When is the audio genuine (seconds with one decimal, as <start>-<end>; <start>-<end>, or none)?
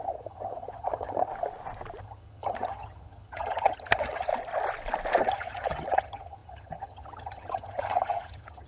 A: 1.3-2.0; 4.3-5.2